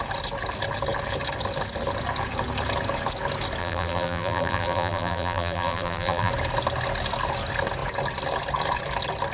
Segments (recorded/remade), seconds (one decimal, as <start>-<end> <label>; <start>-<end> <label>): 0.0-3.6 recorded; 3.6-6.3 remade; 6.3-9.3 recorded